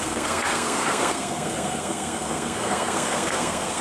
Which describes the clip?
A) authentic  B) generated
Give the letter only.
B